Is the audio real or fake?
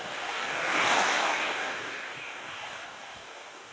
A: fake